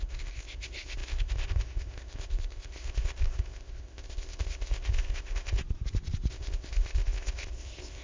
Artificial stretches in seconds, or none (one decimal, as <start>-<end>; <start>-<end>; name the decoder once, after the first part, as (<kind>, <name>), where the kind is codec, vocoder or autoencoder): 0.0-5.6 (codec, ZipCodec); 6.3-8.0